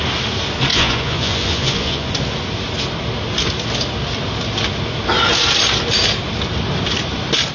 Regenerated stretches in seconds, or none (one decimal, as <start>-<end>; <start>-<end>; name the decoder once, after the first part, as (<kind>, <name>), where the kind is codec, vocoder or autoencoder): 0.7-2.1 (vocoder, Vocos)